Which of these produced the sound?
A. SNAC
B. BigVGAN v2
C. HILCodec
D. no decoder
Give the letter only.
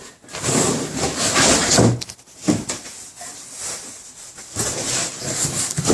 D